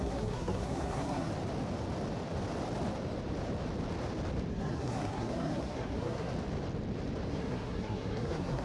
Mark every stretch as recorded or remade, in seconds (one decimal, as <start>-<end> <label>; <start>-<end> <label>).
0.0-1.3 remade; 1.3-4.5 recorded; 4.5-6.3 remade; 6.3-7.3 recorded; 7.3-8.6 remade